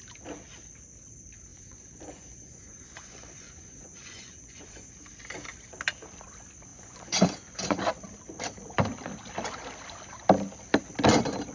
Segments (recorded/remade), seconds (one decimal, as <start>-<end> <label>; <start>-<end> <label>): 0.0-1.5 recorded; 1.5-4.9 remade; 4.9-6.7 recorded; 6.7-7.8 remade; 7.8-11.5 recorded